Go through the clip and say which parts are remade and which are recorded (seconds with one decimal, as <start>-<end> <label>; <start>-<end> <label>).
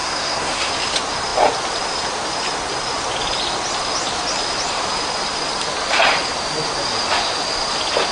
0.0-0.7 remade; 0.7-8.1 recorded